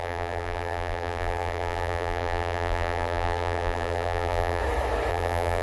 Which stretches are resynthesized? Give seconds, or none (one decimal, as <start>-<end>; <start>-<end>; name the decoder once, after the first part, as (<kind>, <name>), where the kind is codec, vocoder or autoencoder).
0.0-4.6 (vocoder, BigVGAN v2); 5.1-5.6